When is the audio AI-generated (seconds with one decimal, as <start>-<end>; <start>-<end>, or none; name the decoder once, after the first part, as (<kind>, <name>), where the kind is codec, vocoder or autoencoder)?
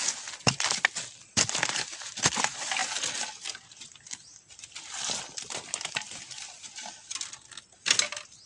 none